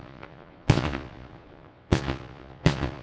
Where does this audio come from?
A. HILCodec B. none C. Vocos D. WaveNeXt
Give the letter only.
C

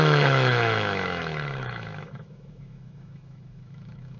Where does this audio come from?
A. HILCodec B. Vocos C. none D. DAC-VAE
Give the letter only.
D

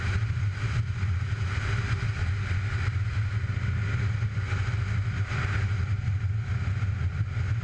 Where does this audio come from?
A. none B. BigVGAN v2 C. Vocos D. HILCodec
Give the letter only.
A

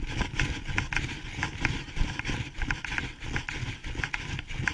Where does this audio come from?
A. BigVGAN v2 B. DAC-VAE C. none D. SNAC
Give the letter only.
C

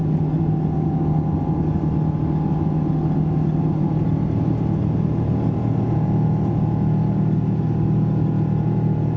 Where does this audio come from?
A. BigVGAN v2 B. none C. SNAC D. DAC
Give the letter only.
B